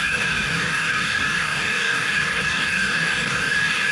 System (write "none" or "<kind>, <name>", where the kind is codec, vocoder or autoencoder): codec, DAC